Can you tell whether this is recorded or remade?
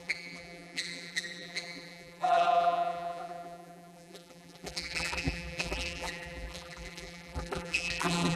remade